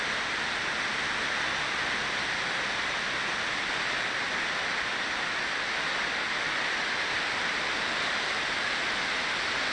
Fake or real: real